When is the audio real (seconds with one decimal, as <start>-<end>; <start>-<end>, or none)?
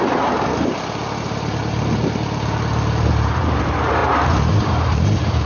0.5-1.2; 1.6-3.1; 4.0-4.5